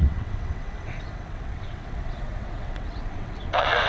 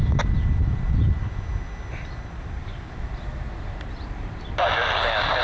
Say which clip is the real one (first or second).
second